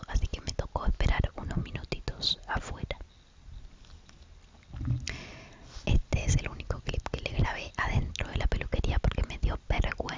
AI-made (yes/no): no